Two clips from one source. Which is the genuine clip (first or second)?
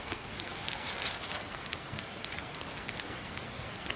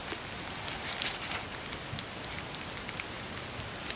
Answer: second